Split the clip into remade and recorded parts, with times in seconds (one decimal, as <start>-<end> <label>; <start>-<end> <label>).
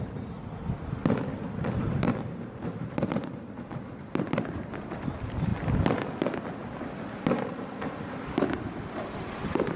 0.0-1.0 remade; 1.0-1.7 recorded; 1.7-3.7 remade; 3.7-4.9 recorded; 4.9-5.5 remade; 5.5-7.5 recorded; 7.5-9.8 remade